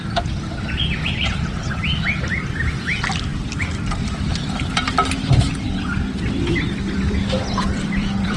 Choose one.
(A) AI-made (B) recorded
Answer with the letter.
A